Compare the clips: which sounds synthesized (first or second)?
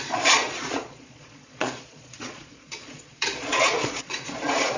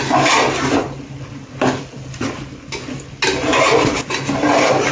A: first